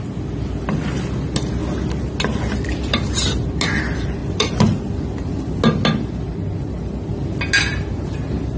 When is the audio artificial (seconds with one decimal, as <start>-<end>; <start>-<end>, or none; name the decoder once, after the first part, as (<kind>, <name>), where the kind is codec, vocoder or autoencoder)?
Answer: 4.2-4.9 (vocoder, BigVGAN v2)